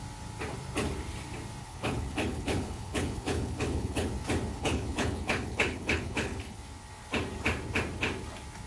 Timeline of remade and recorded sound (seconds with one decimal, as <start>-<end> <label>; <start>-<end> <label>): 0.0-1.6 recorded; 1.6-4.1 remade; 4.1-4.5 recorded; 4.5-6.6 remade; 6.6-8.7 recorded